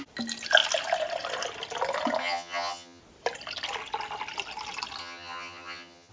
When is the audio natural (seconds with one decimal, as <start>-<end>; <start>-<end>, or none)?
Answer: 0.0-2.2; 3.0-5.0